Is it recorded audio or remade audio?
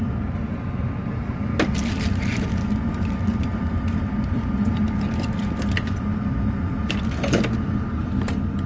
recorded